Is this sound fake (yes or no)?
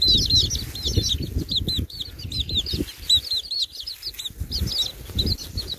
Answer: no